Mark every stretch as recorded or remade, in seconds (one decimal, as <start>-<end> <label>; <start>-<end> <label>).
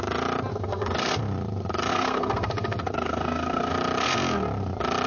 0.0-0.5 recorded; 0.5-1.2 remade; 1.2-1.9 recorded; 1.9-3.7 remade; 3.7-5.1 recorded